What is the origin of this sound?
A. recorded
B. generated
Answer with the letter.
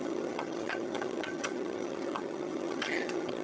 B